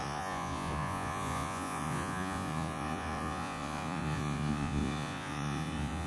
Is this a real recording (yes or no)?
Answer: no